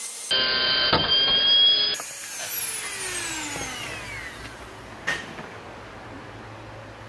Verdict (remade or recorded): recorded